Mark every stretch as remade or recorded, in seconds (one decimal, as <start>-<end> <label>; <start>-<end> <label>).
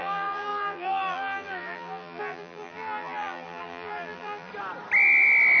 0.0-4.5 remade; 4.5-5.6 recorded